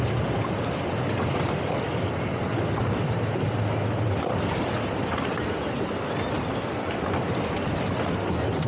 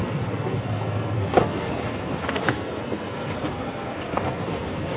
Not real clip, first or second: second